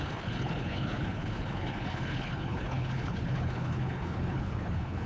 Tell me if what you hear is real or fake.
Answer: fake